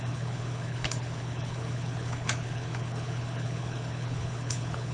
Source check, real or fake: fake